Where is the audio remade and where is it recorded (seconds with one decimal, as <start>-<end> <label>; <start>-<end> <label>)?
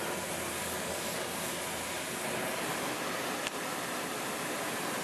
0.0-0.6 recorded; 0.6-1.6 remade; 1.6-5.0 recorded